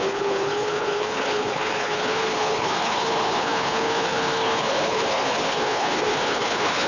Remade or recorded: remade